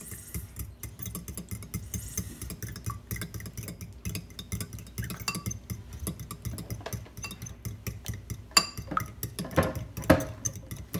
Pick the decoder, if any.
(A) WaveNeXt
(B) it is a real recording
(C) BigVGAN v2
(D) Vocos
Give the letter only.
B